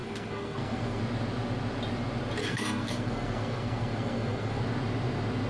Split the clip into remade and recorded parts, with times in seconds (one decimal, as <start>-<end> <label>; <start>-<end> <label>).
0.0-1.0 remade; 1.0-2.4 recorded; 2.4-4.6 remade; 4.6-5.5 recorded